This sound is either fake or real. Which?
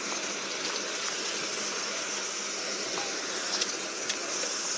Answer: real